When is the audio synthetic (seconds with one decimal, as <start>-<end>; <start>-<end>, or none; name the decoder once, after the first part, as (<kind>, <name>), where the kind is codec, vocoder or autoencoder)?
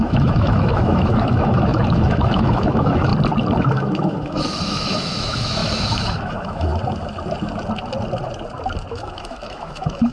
0.0-3.1 (autoencoder, DAC-VAE); 3.6-6.7; 8.9-10.1